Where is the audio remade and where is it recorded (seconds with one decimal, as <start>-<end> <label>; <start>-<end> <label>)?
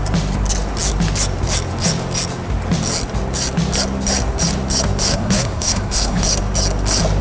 0.0-5.1 recorded; 5.1-6.2 remade; 6.2-7.2 recorded